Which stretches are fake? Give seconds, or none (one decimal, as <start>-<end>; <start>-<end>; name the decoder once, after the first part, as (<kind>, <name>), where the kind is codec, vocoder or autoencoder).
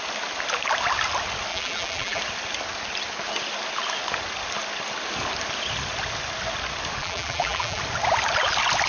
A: 1.5-2.2 (vocoder, BigVGAN v2); 7.0-7.8